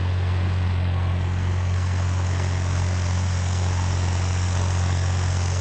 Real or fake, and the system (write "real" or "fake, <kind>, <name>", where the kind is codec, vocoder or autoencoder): fake, codec, SNAC